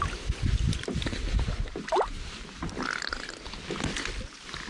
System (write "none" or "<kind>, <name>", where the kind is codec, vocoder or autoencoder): none